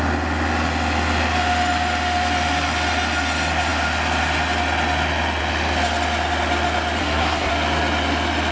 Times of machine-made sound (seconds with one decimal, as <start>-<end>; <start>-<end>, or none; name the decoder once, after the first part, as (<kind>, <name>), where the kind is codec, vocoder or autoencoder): 7.0-7.5 (codec, SNAC)